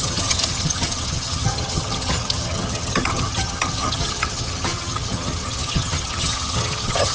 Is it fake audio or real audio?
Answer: fake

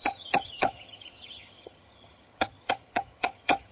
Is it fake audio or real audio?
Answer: fake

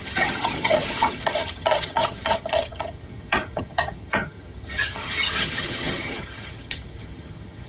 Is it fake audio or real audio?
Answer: fake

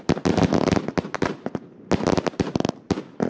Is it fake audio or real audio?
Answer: real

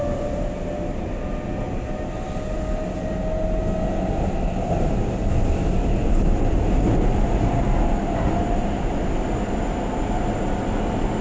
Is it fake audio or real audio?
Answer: real